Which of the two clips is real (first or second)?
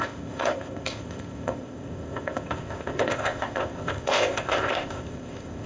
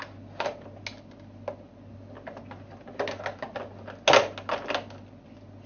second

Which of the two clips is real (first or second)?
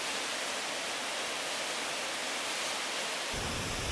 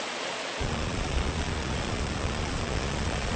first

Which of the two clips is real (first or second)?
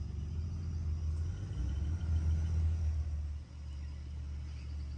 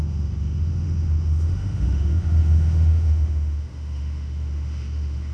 first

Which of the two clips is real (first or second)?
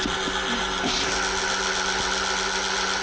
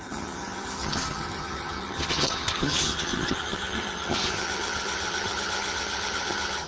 first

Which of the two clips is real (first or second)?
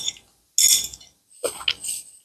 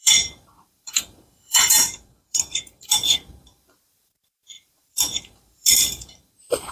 first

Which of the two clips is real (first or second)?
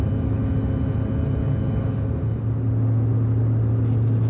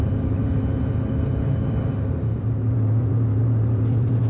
first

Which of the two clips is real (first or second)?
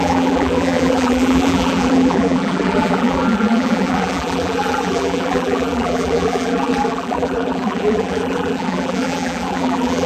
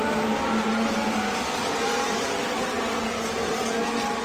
second